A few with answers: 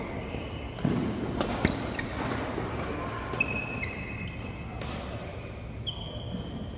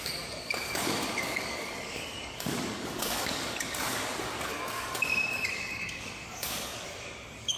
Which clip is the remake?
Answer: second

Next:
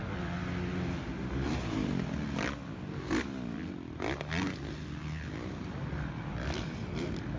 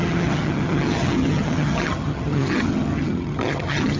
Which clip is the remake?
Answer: second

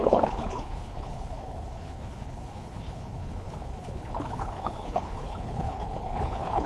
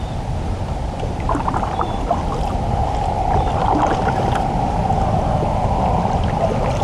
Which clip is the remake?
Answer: first